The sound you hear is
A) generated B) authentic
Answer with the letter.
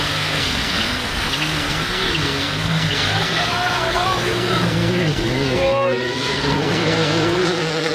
A